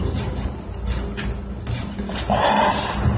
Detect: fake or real real